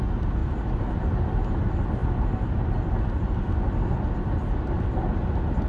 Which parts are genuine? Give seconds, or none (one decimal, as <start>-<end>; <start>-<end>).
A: 0.0-5.7

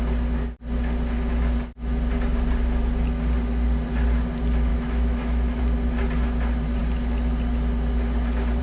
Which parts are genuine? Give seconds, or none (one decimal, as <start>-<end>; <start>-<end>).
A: 0.0-4.7; 5.6-8.6

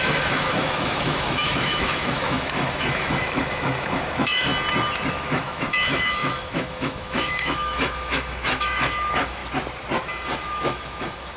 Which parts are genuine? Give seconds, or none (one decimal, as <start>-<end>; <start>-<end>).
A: 4.5-5.1; 9.4-10.4

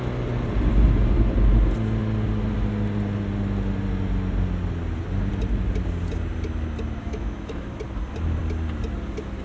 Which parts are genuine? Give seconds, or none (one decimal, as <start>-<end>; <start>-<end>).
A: 0.0-7.0; 7.8-9.4

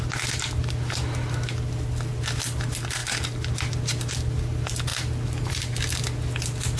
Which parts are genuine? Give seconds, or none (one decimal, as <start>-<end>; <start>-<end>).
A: 0.0-6.8